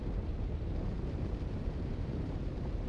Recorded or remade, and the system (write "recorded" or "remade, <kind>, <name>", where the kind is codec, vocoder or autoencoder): remade, vocoder, BigVGAN v2